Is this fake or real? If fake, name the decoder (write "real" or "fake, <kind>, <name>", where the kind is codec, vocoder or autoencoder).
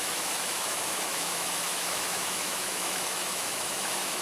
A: fake, autoencoder, DAC-VAE